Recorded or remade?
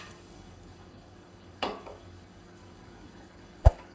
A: remade